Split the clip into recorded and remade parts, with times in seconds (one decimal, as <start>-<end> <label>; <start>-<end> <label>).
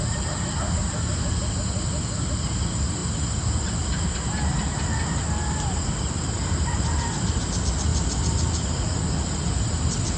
0.0-10.2 recorded